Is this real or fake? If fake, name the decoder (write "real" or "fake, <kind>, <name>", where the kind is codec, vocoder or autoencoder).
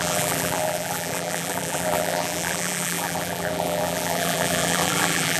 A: fake, vocoder, BigVGAN v2